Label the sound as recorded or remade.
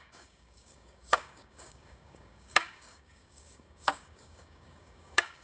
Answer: remade